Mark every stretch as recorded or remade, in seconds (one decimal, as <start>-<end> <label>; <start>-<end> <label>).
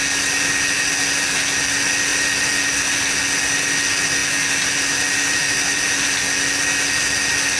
0.0-7.6 recorded